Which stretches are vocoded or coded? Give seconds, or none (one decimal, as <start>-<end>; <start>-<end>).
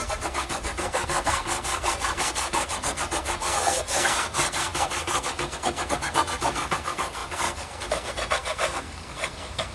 0.0-9.7